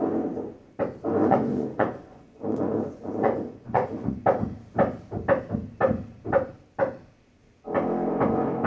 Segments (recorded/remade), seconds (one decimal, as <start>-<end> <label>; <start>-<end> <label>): 0.0-1.2 recorded; 1.2-4.2 remade; 4.2-8.7 recorded